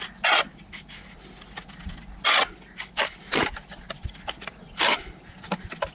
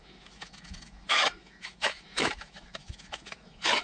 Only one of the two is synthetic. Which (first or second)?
second